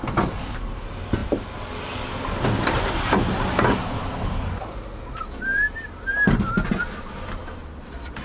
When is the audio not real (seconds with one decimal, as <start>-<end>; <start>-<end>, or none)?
4.6-5.2